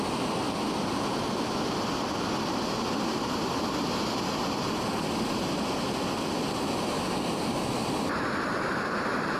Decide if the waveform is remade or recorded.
recorded